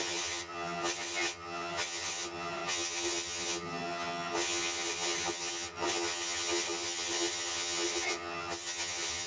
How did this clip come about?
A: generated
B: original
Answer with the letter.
A